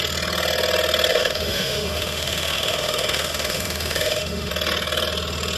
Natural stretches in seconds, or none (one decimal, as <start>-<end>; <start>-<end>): 0.0-1.1; 4.5-5.6